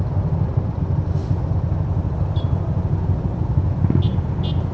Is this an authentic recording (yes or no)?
yes